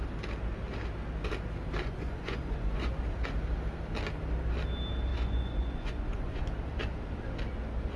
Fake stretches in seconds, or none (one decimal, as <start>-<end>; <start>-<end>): 1.8-3.0; 5.1-6.4